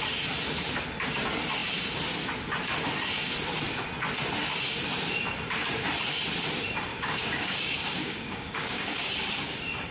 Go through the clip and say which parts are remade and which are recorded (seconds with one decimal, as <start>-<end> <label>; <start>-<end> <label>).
0.0-6.9 recorded; 6.9-9.1 remade; 9.1-9.9 recorded